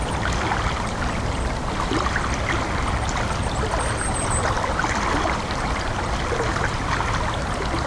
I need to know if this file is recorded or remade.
recorded